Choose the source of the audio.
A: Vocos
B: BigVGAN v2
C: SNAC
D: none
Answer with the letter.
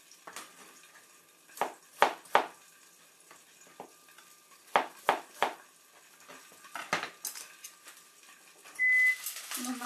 D